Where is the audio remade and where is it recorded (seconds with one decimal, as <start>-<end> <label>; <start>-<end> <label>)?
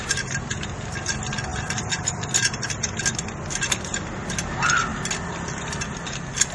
0.0-6.5 recorded